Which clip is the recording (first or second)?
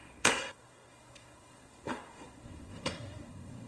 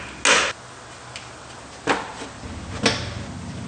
second